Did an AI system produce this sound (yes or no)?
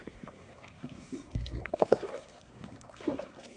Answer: yes